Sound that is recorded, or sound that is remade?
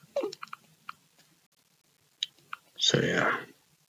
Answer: recorded